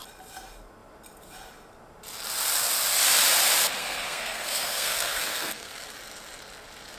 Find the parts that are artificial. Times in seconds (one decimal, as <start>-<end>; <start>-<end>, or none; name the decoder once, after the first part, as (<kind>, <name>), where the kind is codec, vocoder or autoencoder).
3.8-5.7 (codec, SNAC)